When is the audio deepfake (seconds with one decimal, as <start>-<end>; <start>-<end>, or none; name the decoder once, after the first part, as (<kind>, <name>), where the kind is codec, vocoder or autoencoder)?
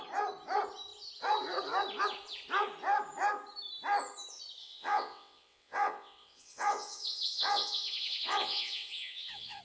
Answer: 4.6-9.6 (vocoder, WaveNeXt)